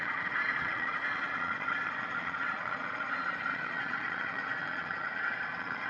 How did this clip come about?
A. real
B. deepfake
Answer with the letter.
B